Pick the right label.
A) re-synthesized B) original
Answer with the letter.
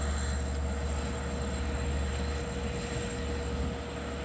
B